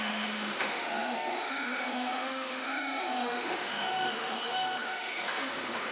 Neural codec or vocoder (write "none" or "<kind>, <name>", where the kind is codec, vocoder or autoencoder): autoencoder, DAC-VAE